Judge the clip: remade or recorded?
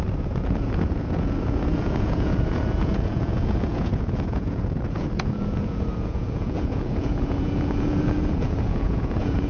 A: remade